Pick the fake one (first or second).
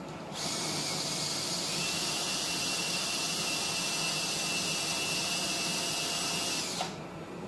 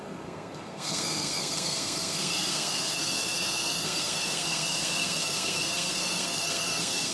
second